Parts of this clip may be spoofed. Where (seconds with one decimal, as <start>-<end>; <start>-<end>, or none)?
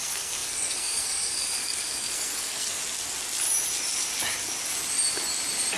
0.0-2.8